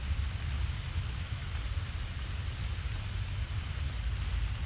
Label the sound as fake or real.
real